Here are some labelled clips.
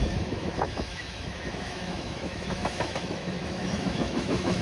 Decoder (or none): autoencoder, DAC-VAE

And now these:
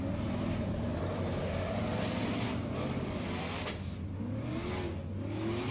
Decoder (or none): none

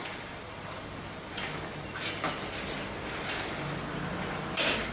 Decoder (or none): none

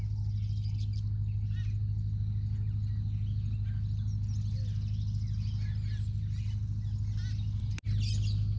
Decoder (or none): none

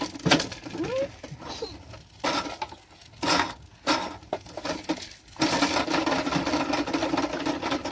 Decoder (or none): none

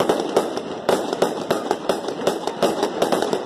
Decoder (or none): vocoder, BigVGAN v2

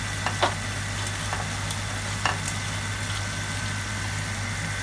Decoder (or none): none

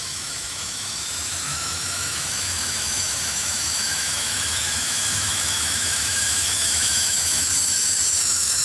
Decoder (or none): autoencoder, DAC-VAE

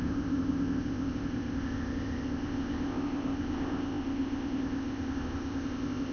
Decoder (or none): codec, ZipCodec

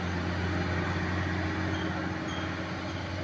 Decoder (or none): none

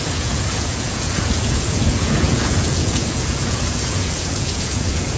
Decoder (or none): vocoder, Vocos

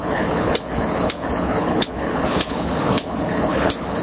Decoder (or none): codec, HILCodec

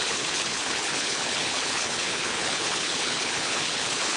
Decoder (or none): codec, HILCodec